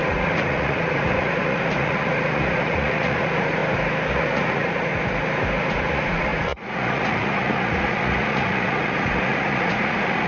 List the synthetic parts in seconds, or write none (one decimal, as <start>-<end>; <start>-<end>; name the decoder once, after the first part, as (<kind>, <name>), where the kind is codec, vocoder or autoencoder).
0.0-3.6 (vocoder, Vocos); 4.1-4.9; 5.7-10.3